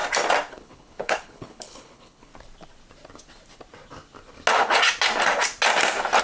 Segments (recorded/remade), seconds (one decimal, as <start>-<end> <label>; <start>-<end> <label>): 0.0-0.5 recorded; 0.5-2.3 remade; 2.3-6.2 recorded